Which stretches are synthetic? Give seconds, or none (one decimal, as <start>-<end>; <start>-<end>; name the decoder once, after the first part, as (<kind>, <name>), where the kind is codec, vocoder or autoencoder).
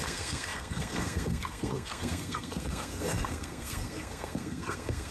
0.0-5.1 (codec, SNAC)